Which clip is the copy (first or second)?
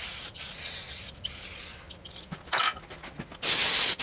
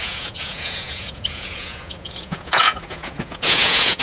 second